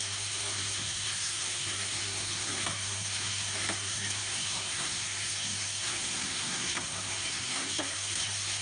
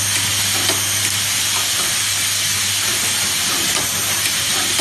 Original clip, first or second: second